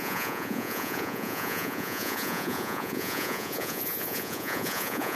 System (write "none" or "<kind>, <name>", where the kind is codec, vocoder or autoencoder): vocoder, Vocos